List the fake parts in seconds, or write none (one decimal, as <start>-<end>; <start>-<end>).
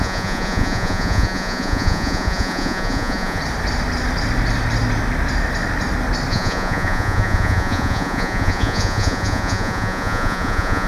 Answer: 0.0-3.4; 6.3-10.9